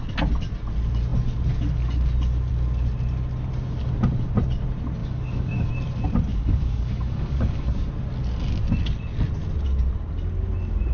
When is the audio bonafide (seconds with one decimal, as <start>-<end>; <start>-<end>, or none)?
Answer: 0.0-5.0; 5.7-6.3; 7.9-10.9